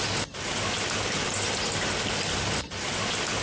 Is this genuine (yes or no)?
yes